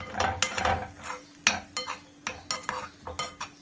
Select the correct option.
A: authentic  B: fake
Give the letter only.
A